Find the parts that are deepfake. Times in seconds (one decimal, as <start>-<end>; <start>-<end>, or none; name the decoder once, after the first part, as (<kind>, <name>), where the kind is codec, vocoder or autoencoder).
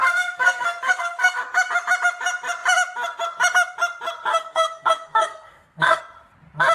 0.0-1.4 (codec, SNAC); 4.3-6.0